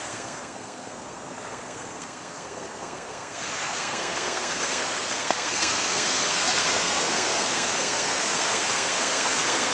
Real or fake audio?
fake